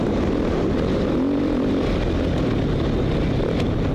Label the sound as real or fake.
real